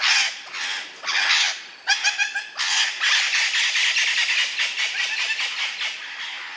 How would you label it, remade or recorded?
recorded